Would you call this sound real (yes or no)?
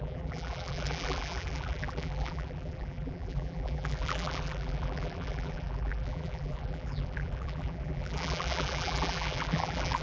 no